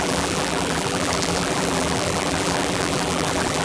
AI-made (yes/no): yes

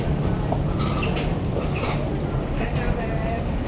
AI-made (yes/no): no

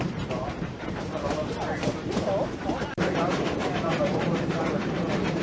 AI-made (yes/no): yes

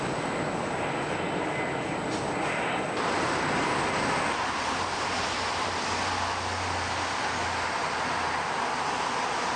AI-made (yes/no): no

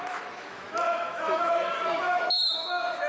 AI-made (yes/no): yes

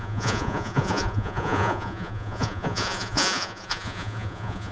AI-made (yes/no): yes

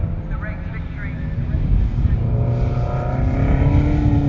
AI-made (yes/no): no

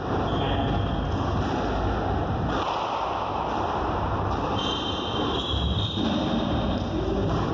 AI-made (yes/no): no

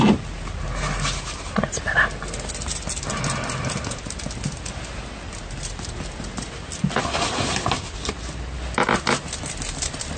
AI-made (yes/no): no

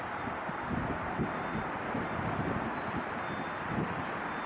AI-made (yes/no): no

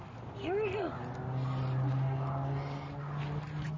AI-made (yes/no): no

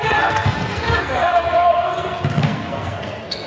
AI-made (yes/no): yes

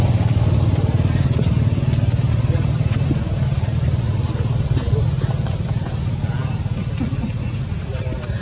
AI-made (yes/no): no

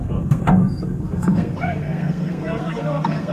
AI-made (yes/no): yes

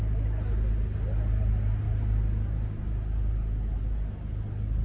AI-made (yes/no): no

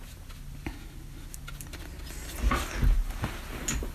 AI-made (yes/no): no